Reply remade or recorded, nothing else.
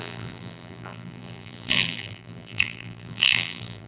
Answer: remade